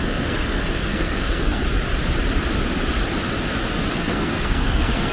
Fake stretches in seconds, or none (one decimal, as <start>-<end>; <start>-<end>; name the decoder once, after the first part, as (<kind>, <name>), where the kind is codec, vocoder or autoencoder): 0.0-1.6 (codec, SNAC); 3.9-5.1